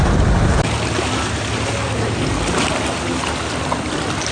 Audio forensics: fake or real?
real